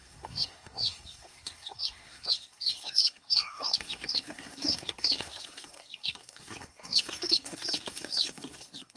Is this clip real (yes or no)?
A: no